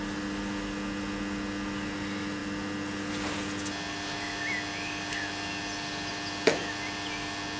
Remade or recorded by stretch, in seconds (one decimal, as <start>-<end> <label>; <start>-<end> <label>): 0.0-7.6 recorded